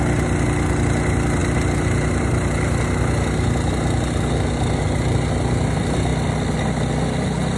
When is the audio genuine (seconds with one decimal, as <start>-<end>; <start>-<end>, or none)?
0.0-7.6

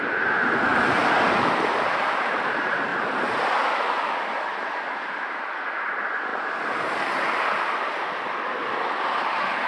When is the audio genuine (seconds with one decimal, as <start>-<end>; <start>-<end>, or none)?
0.7-1.4; 2.9-4.2; 6.3-9.2

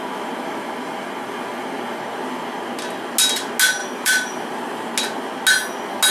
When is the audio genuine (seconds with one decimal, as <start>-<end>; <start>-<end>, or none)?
0.0-3.8; 4.9-6.1

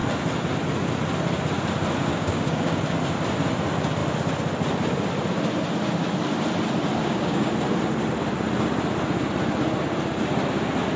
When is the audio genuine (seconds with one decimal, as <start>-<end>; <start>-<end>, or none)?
0.0-2.1; 2.8-7.0; 7.5-11.0

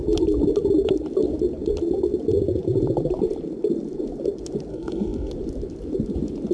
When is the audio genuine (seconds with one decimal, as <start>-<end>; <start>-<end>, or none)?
0.0-4.7; 5.3-6.5